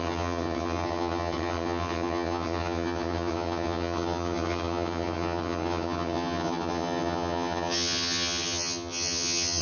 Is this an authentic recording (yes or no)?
no